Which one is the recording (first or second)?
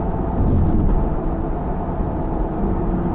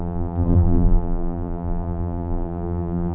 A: first